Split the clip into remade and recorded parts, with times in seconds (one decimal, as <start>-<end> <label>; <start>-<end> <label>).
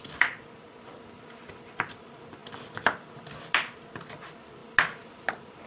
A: 0.0-5.7 recorded